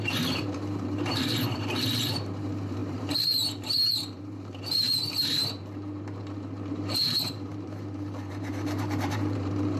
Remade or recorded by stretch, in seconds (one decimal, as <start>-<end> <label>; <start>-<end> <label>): 0.0-9.8 remade